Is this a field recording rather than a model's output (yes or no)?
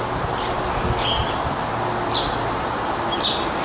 yes